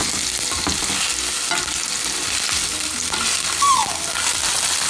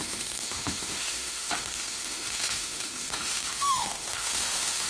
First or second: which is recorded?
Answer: first